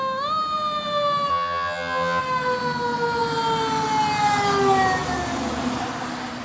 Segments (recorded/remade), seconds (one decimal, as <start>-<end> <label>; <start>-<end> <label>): 0.0-1.3 recorded; 1.3-2.2 remade; 2.2-6.4 recorded